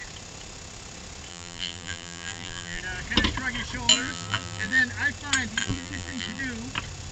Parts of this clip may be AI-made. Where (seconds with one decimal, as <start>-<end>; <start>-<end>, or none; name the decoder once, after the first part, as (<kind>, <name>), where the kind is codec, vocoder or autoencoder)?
1.3-2.8 (vocoder, BigVGAN v2); 3.9-4.8; 5.6-6.4